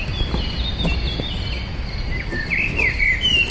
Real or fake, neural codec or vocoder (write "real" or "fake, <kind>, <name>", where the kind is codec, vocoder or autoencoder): real